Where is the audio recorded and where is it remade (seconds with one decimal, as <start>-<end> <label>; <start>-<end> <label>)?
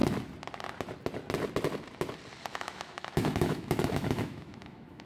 0.0-2.5 recorded; 2.5-5.1 remade